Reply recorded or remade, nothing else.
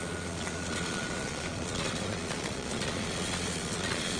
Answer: remade